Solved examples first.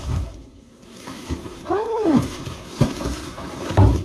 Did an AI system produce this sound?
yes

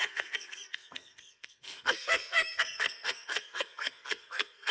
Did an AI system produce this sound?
yes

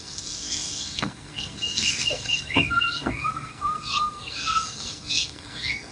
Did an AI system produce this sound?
yes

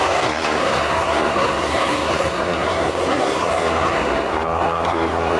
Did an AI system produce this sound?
yes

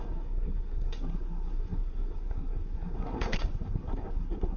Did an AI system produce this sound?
yes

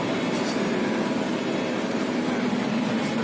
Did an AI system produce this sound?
no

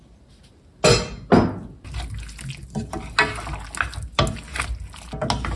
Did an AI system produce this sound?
no